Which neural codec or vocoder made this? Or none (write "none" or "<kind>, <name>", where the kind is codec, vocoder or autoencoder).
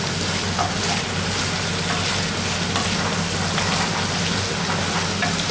none